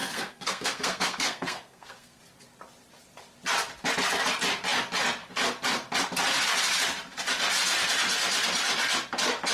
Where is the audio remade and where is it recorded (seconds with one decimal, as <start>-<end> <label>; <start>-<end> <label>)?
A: 0.0-2.2 remade; 2.2-9.5 recorded